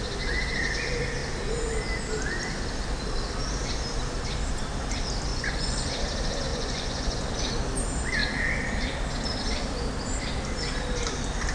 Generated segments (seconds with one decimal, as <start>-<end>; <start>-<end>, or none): 5.3-5.9; 6.5-7.2